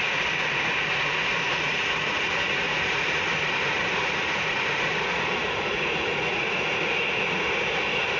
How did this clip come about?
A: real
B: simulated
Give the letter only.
B